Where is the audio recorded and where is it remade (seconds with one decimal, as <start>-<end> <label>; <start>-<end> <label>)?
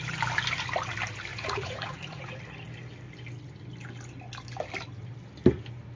0.0-1.3 recorded; 1.3-2.4 remade; 2.4-6.0 recorded